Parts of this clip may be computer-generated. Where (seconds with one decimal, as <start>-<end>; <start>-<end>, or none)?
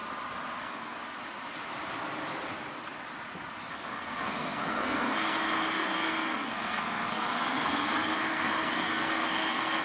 0.6-1.0; 3.7-9.8